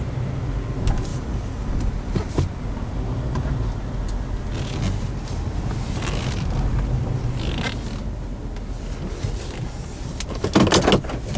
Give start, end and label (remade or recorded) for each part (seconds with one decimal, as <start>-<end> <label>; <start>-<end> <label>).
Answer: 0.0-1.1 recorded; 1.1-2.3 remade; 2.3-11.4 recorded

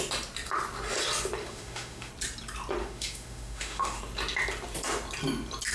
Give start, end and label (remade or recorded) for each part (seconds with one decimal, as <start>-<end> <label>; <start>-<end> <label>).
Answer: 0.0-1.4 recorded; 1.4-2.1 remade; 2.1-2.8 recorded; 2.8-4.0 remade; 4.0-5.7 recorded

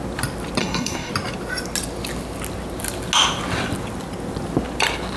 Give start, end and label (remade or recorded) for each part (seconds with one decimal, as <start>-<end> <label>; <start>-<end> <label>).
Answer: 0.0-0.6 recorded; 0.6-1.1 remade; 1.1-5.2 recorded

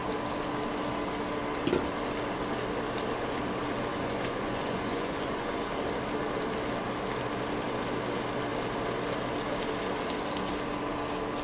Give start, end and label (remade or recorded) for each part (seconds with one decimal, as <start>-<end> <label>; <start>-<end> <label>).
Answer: 0.0-3.9 recorded; 3.9-5.7 remade; 5.7-11.4 recorded

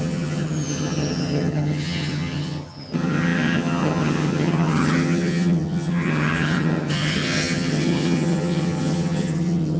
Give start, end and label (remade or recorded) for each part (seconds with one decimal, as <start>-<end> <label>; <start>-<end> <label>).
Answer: 0.0-9.8 remade